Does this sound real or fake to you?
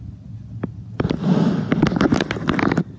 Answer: real